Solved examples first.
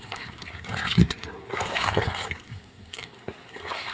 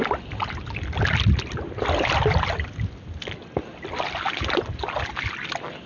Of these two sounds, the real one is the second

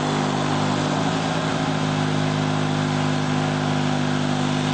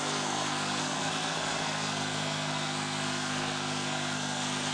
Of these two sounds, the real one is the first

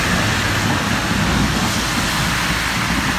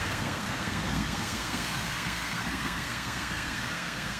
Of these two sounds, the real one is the first